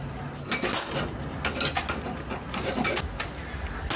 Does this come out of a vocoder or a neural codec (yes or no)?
no